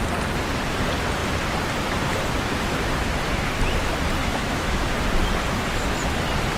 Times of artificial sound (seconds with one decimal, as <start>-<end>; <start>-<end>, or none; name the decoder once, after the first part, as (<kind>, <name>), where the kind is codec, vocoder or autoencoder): 4.2-4.8 (autoencoder, DAC-VAE)